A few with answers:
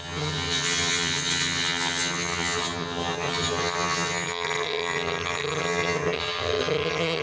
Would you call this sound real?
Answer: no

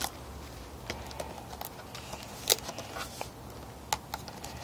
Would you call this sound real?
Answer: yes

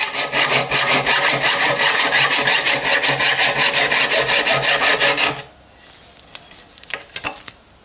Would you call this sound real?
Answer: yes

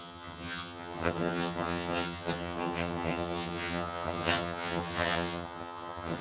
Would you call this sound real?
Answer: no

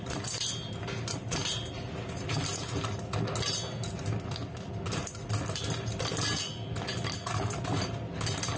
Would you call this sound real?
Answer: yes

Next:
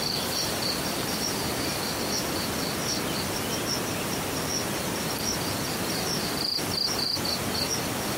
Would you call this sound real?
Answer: yes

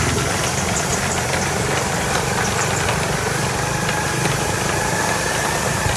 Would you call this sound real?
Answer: yes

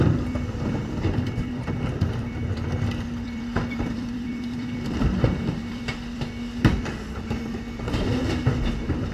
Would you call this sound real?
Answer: no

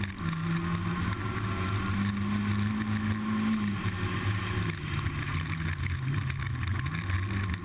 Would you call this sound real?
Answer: yes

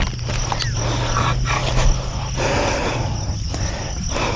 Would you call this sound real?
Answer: yes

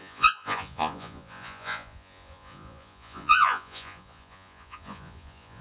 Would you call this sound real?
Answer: no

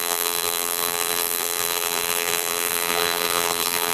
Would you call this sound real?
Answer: no